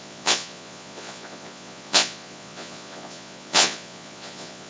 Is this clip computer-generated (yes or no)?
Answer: yes